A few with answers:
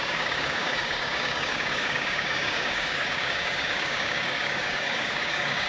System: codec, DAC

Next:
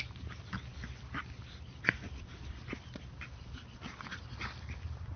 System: none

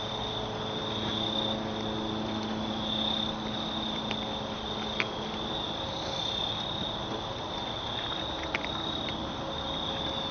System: none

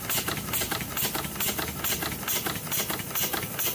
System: none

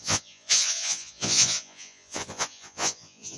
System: vocoder, Vocos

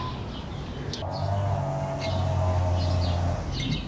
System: none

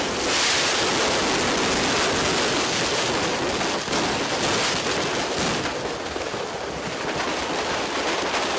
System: none